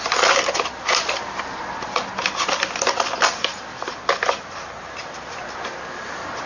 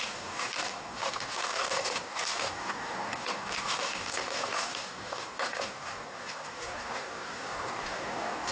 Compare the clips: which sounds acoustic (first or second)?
first